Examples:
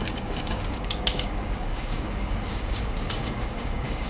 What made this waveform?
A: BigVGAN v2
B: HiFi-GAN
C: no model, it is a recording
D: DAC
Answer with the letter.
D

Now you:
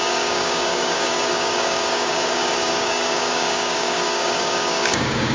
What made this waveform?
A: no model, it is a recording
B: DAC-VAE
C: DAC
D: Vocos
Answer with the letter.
C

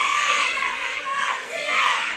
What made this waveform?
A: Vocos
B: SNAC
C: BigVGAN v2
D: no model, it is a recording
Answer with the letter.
B